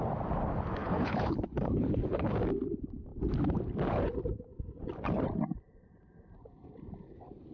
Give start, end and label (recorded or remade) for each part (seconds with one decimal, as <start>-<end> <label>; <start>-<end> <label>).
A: 0.0-0.8 recorded; 0.8-2.3 remade; 2.3-7.5 recorded